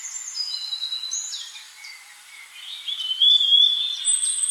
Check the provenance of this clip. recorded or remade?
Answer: remade